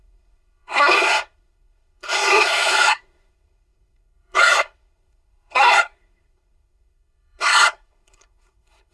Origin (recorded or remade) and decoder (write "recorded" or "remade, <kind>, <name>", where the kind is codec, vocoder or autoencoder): remade, codec, SNAC